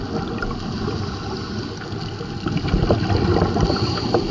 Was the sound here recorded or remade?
recorded